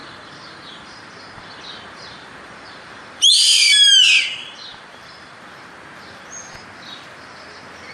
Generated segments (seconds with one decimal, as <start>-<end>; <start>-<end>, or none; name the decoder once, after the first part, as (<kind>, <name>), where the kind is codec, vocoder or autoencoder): 0.0-3.5 (vocoder, BigVGAN v2); 4.2-5.4